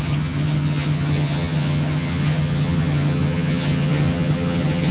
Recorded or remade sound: remade